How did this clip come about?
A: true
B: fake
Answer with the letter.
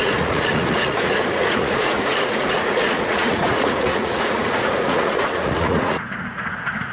B